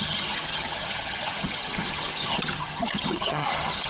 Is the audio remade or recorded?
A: remade